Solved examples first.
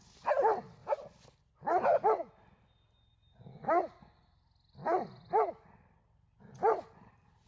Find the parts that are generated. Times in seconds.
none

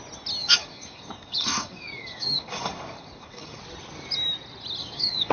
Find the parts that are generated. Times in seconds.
0.4-3.6 (codec, DAC); 4.8-5.3

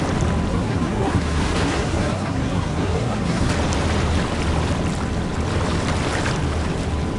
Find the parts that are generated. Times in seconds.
0.5-3.5 (codec, SNAC)

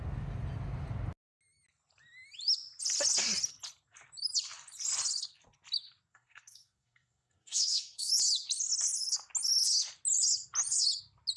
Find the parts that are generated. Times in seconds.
6.1-8.1 (codec, SNAC)

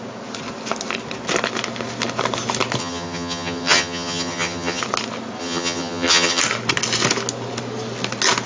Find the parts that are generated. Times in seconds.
2.8-4.8 (vocoder, HiFi-GAN); 5.4-6.4

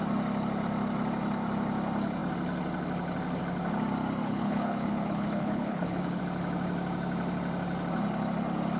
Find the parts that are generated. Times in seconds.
4.2-6.2 (codec, HILCodec)

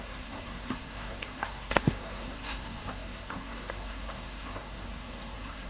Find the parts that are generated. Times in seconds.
0.0-5.7 (codec, SNAC)